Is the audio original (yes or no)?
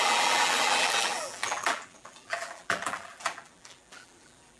no